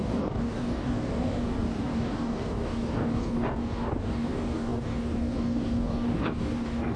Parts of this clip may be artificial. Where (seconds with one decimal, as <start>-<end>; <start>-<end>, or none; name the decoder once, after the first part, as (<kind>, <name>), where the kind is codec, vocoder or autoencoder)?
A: 0.0-7.0 (codec, DAC)